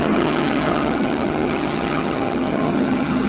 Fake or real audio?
fake